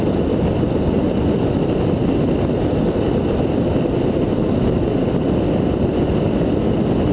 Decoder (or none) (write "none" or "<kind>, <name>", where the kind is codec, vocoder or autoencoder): none